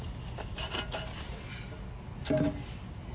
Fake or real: real